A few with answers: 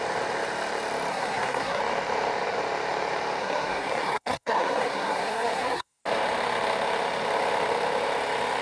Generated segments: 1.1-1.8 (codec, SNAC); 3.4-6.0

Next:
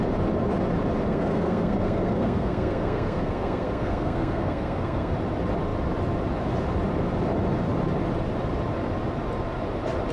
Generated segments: 1.1-5.1 (codec, SNAC)

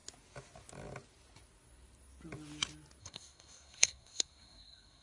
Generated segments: 3.0-5.0 (codec, SNAC)

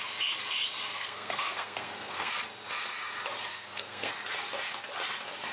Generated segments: 0.9-2.3 (codec, SNAC); 3.5-4.1

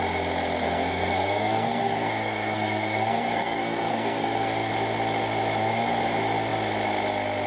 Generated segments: 0.6-4.7 (codec, SNAC)

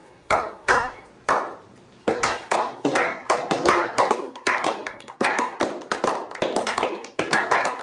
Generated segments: 0.0-1.1 (codec, SNAC); 2.0-5.6; 6.6-7.8

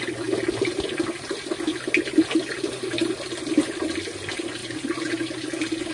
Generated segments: none

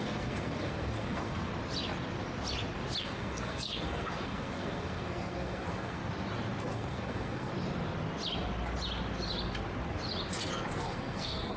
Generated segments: 0.0-1.5 (codec, SNAC); 3.0-6.0; 6.6-7.5; 10.7-11.6